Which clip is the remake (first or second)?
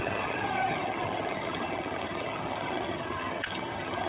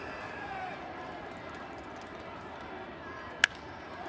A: first